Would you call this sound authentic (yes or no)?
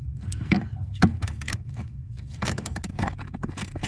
no